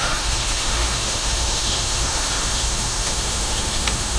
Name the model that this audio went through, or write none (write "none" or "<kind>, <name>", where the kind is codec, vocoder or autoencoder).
autoencoder, DAC-VAE